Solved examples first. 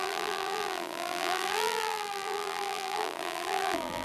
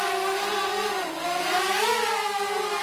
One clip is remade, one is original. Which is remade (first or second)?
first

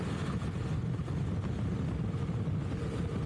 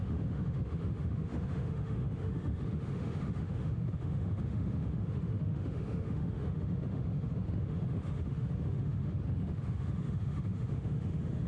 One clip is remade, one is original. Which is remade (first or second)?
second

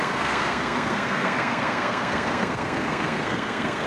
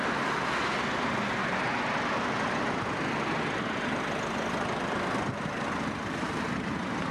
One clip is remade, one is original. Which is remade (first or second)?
first